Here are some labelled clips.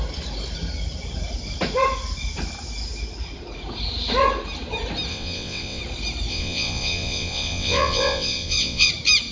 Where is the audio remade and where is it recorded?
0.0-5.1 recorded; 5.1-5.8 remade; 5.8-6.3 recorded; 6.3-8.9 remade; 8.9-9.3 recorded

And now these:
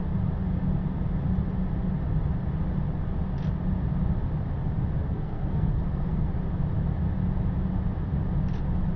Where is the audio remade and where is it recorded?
0.0-5.0 recorded; 5.0-6.3 remade; 6.3-9.0 recorded

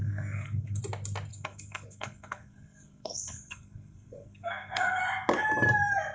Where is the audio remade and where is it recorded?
0.0-0.8 remade; 0.8-1.3 recorded; 1.3-5.0 remade; 5.0-6.1 recorded